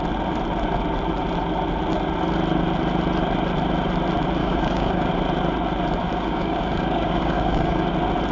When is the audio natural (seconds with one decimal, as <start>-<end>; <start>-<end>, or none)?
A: 0.0-4.4; 5.1-6.0; 7.9-8.3